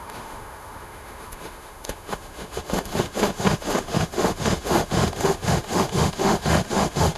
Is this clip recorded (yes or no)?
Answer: no